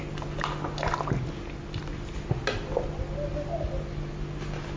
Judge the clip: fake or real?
real